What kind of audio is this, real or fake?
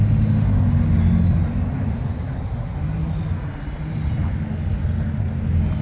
real